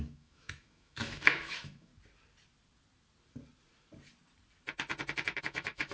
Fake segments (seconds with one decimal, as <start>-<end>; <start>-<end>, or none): 0.0-1.9; 5.4-5.9